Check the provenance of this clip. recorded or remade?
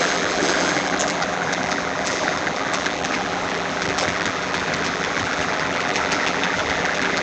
remade